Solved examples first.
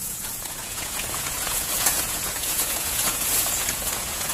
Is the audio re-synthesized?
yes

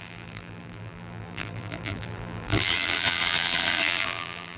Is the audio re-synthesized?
yes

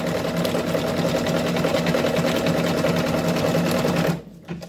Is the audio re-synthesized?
no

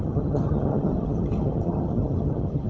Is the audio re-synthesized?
yes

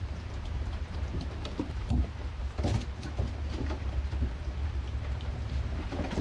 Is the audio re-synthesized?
yes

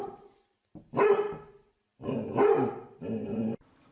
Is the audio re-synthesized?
no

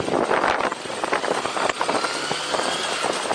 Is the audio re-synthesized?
no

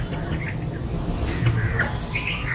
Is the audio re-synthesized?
no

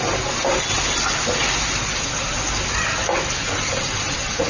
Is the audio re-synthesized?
no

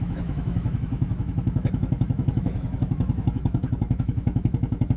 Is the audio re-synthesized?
yes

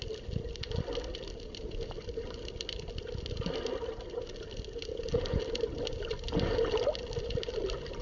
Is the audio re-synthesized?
no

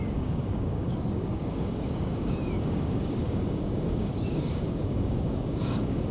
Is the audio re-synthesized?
yes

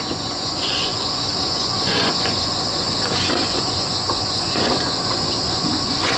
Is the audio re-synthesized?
yes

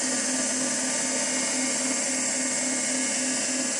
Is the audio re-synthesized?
no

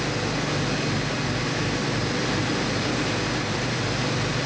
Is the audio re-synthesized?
no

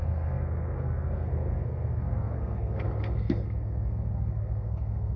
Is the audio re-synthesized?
yes